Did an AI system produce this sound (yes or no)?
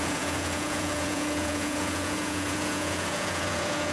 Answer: yes